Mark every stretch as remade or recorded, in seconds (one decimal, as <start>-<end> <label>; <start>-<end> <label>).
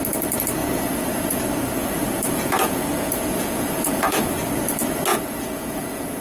0.0-0.6 recorded; 0.6-1.4 remade; 1.4-1.8 recorded; 1.8-4.4 remade; 4.4-5.1 recorded; 5.1-6.2 remade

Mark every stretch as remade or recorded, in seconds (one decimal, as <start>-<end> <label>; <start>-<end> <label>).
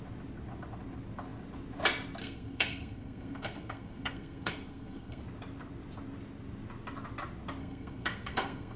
0.0-2.2 recorded; 2.2-5.2 remade; 5.2-7.6 recorded; 7.6-8.8 remade